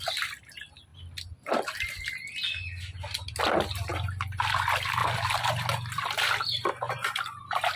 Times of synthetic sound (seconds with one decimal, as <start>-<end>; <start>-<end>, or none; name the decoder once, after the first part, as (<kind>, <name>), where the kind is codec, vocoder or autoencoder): 0.0-0.9 (vocoder, BigVGAN v2); 3.4-5.0; 5.7-7.8